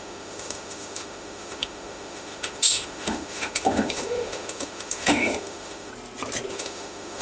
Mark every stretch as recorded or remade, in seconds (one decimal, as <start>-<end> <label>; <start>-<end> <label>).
0.0-5.9 remade; 5.9-6.5 recorded; 6.5-7.2 remade